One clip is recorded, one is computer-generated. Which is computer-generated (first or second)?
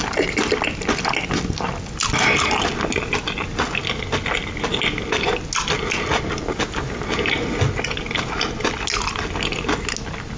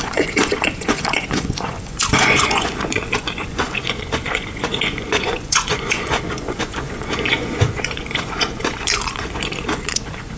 second